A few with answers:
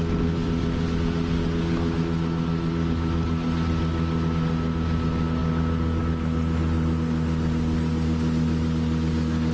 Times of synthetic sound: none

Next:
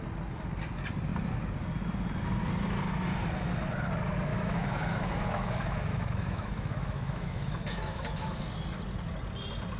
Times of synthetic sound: 4.3-8.4 (autoencoder, DAC-VAE)

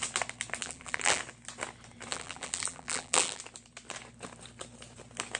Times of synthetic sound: 0.6-1.2 (vocoder, BigVGAN v2); 2.1-3.4

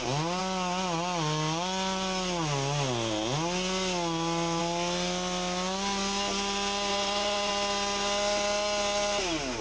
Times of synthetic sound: 6.9-7.5 (vocoder, Vocos)

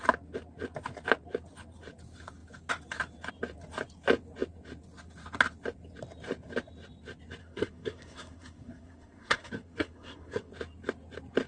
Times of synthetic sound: 7.4-10.5 (codec, SNAC)

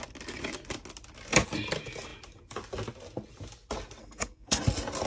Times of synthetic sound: 4.0-4.6 (codec, SNAC)